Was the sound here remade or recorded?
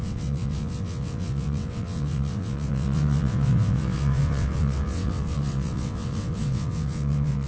remade